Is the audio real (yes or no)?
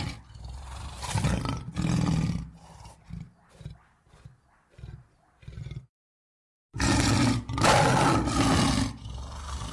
yes